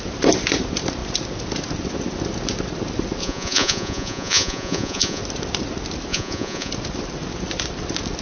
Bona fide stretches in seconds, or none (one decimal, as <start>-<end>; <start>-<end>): 0.0-3.2; 5.2-6.1; 6.7-8.2